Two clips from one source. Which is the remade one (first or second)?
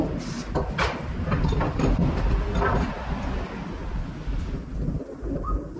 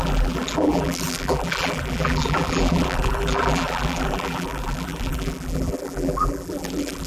second